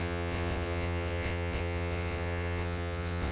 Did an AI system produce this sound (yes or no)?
yes